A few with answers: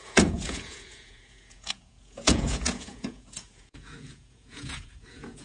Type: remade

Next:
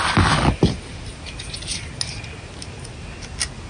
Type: recorded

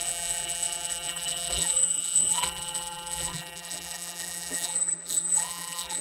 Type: remade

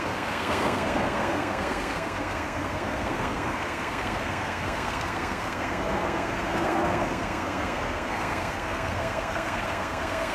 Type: remade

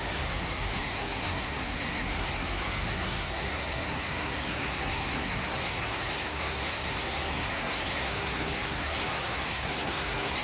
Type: remade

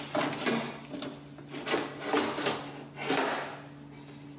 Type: recorded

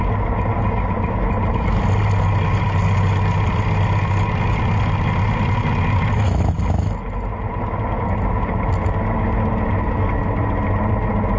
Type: recorded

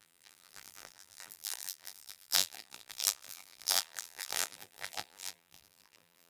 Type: remade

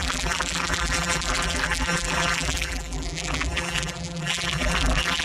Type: remade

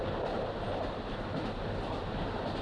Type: recorded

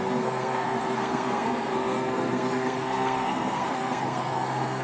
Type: remade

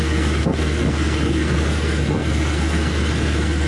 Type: remade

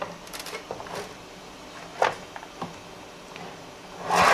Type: recorded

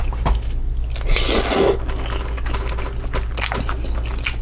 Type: recorded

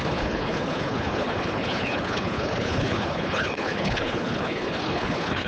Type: remade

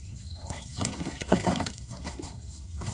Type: remade